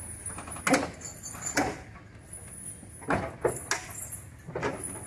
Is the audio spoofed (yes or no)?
no